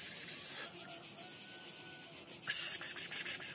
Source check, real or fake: real